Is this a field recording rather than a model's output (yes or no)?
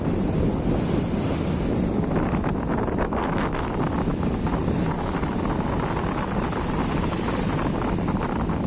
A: yes